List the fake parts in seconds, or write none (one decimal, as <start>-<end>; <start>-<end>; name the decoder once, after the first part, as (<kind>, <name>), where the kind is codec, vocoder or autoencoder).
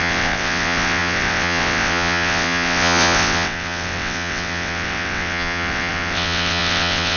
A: 0.0-7.2 (vocoder, WaveNeXt)